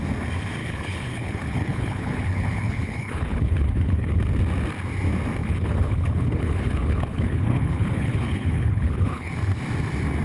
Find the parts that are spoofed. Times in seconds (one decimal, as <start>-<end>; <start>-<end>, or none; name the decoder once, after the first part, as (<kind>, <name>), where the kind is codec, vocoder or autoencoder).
0.6-4.2 (codec, HILCodec); 5.4-9.3